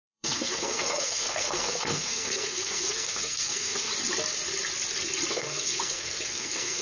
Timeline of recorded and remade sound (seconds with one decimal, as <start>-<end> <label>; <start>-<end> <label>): 0.0-3.9 remade; 3.9-5.3 recorded; 5.3-6.8 remade